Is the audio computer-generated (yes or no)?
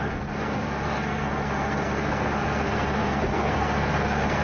yes